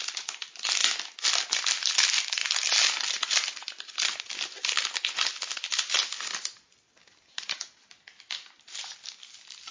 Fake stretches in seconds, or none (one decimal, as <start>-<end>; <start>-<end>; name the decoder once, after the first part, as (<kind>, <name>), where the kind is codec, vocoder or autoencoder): none